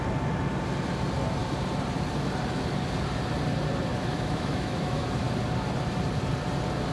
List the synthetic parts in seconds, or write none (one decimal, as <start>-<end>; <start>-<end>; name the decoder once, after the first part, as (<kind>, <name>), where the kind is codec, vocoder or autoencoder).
3.9-5.1 (autoencoder, DAC-VAE)